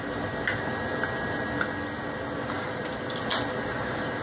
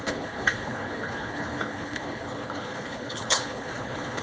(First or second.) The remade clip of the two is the second